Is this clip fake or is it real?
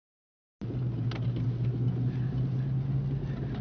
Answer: real